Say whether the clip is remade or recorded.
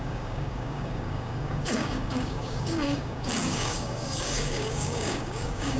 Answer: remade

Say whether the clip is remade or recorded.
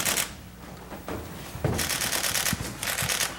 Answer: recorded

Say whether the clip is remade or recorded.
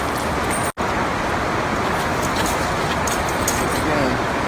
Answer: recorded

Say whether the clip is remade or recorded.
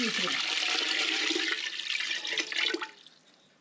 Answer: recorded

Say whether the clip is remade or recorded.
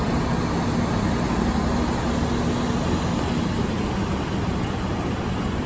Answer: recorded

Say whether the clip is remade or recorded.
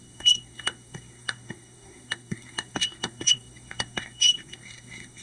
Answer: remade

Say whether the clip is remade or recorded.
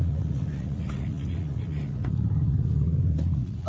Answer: remade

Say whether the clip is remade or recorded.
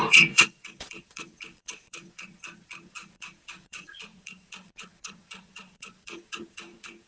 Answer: remade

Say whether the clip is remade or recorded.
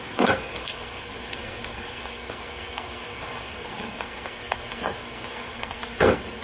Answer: remade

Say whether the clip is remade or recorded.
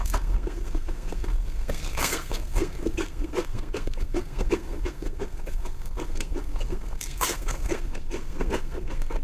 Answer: remade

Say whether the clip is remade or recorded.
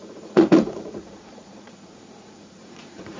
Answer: remade